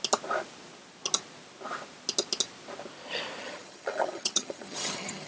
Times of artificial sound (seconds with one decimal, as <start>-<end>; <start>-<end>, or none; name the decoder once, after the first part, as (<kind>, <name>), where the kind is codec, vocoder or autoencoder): 3.4-5.3 (vocoder, HiFi-GAN)